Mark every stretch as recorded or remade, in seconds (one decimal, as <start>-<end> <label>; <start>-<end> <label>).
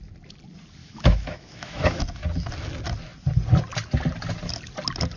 0.0-0.8 recorded; 0.8-2.0 remade; 2.0-5.2 recorded